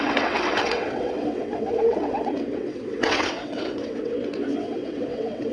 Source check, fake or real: fake